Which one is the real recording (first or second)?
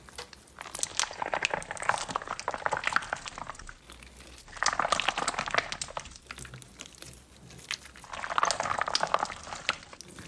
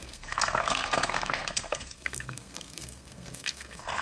first